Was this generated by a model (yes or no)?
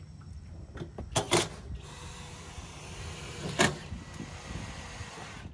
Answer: no